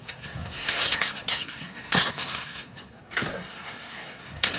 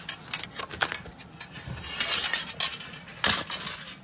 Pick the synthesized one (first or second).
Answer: first